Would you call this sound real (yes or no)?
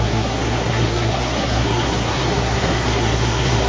no